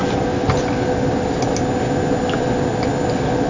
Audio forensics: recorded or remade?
recorded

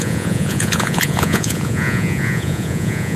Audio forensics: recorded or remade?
remade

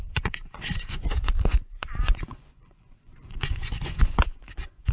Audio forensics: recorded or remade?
remade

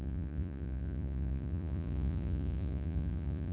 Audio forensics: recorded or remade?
remade